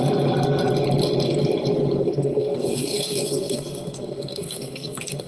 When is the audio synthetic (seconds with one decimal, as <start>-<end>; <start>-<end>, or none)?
2.0-5.3